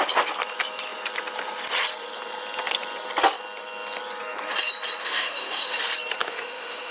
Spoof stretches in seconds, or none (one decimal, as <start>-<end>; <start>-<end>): 5.0-5.8; 6.2-6.9